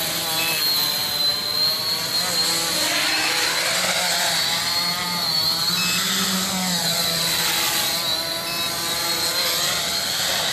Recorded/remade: recorded